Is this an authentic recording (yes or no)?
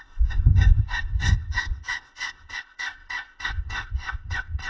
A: no